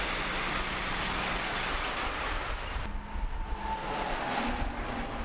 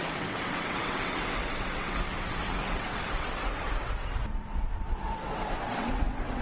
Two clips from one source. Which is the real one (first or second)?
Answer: first